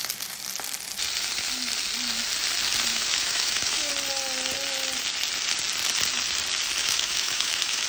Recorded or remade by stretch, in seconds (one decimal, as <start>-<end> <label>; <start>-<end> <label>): 0.0-2.9 recorded; 2.9-3.9 remade; 3.9-6.8 recorded; 6.8-7.9 remade